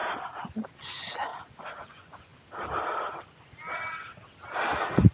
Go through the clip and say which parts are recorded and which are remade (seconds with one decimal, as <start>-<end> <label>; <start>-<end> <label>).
0.0-0.8 recorded; 0.8-1.3 remade; 1.3-1.8 recorded; 1.8-2.3 remade; 2.3-5.1 recorded